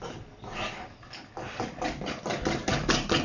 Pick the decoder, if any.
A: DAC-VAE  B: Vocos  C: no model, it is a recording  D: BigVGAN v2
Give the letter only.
C